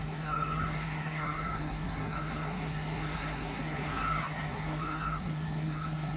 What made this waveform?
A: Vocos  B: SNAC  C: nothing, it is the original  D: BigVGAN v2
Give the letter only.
B